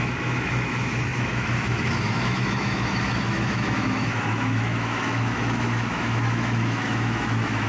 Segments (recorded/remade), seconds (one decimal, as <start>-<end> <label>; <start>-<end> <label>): 0.0-7.7 remade